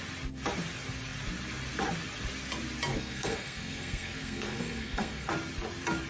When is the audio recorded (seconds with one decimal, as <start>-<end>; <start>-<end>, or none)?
0.0-2.9; 5.3-6.1